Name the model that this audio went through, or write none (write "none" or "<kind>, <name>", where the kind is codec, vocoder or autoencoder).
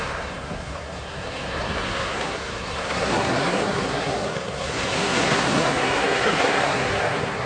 codec, SNAC